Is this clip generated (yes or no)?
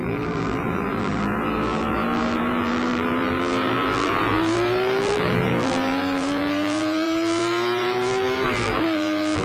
yes